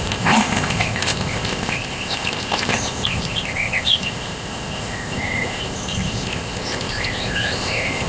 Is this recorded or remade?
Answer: remade